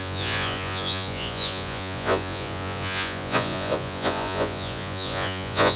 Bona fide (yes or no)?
no